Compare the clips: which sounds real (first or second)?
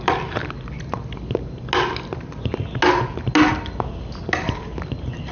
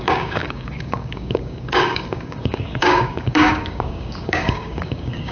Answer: first